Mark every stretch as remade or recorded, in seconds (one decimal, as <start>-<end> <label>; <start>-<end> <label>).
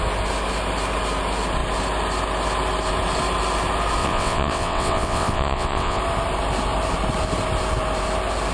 0.0-4.0 recorded; 4.0-6.0 remade; 6.0-8.5 recorded